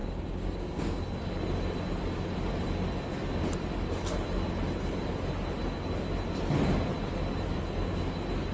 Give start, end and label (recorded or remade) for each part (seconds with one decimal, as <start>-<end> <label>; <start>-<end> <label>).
0.0-1.0 remade; 1.0-8.5 recorded